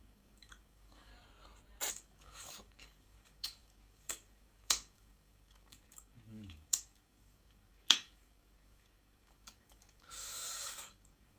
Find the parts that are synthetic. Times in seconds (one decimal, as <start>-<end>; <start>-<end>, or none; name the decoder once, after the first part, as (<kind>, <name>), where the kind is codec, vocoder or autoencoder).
0.0-1.1 (codec, DAC); 1.9-11.4